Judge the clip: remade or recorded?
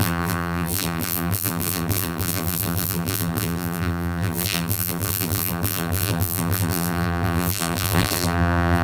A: remade